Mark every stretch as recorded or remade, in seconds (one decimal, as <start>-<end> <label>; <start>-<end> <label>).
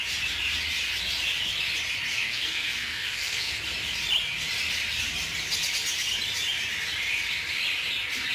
0.0-2.1 recorded; 2.1-3.6 remade; 3.6-8.3 recorded